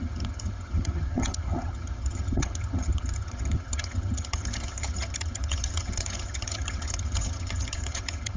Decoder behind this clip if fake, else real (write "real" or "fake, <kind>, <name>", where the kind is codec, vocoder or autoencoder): fake, vocoder, HiFi-GAN